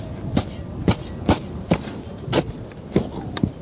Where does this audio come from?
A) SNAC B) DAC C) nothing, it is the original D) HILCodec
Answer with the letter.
C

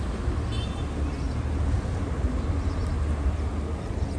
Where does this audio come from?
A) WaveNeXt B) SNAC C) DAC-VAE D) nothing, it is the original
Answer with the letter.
D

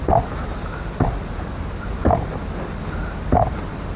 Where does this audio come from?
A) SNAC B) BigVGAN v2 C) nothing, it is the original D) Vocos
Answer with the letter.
C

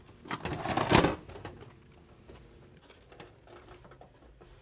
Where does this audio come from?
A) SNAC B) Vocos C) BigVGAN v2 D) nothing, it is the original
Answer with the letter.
D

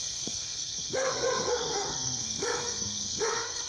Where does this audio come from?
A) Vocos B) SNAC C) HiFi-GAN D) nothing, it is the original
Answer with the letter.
B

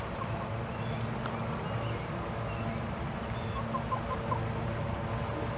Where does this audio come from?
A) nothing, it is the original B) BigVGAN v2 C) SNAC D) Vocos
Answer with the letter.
A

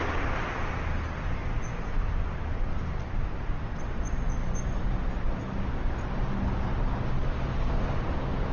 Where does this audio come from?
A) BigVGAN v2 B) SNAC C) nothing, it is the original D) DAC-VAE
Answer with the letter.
C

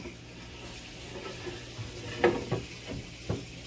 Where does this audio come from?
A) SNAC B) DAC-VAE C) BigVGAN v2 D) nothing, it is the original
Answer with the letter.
D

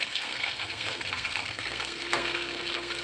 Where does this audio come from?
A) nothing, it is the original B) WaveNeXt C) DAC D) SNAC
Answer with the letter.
D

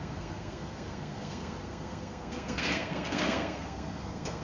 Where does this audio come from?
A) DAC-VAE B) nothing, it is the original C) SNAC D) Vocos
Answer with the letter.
C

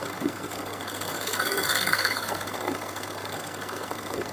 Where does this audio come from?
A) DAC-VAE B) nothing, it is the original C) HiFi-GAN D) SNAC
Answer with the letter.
D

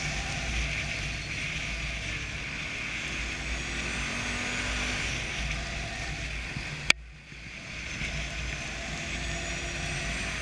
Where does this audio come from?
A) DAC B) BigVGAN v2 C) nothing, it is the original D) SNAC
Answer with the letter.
C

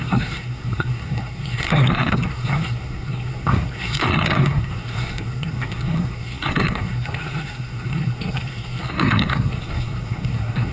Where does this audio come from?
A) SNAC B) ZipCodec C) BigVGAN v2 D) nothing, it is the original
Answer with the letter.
A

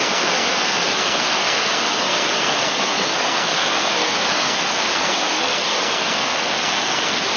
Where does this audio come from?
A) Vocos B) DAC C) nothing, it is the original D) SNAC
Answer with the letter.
D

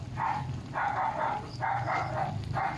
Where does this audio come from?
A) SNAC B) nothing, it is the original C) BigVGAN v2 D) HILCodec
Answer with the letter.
B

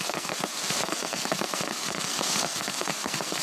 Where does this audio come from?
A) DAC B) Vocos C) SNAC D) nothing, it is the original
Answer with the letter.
C